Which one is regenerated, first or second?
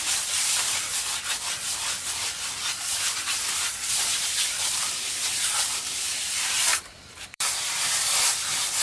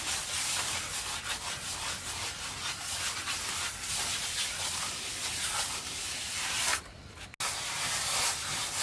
first